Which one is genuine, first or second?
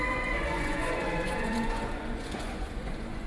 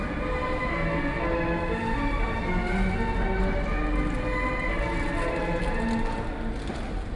second